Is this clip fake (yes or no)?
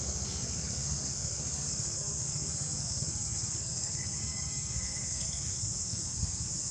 yes